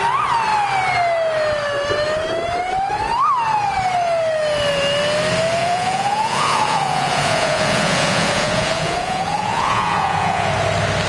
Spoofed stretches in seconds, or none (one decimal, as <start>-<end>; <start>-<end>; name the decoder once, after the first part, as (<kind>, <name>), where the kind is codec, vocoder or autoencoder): 5.6-10.5 (vocoder, Vocos)